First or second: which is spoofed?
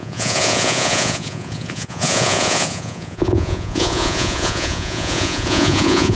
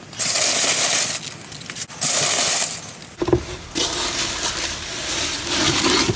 first